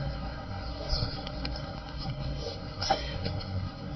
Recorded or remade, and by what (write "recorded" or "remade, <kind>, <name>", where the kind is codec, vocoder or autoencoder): remade, codec, SNAC